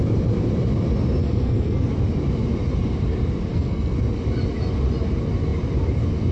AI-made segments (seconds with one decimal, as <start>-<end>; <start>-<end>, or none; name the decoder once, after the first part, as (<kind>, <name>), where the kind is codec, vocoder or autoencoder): 1.2-1.9 (codec, SNAC); 3.5-4.0